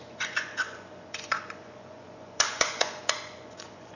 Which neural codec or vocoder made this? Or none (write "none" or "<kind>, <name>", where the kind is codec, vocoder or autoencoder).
vocoder, Vocos